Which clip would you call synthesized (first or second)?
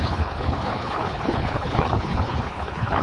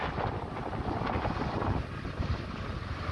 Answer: first